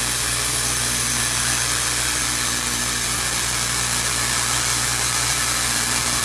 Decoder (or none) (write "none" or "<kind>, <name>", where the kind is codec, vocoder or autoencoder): none